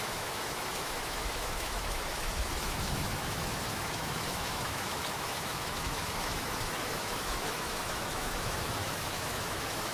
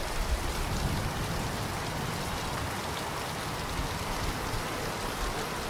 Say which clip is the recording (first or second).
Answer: second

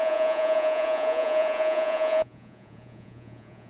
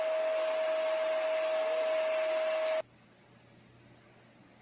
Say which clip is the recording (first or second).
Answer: second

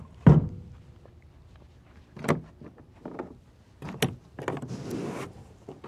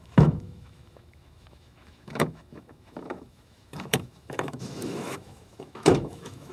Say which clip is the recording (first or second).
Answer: first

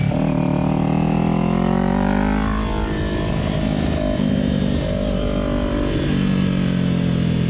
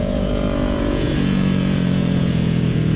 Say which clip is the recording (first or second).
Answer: first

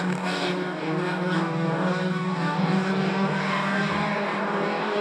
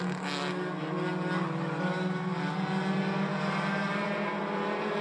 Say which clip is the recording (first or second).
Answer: second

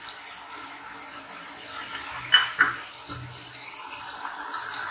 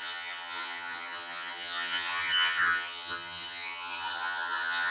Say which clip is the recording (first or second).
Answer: first